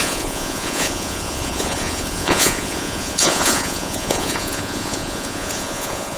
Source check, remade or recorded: remade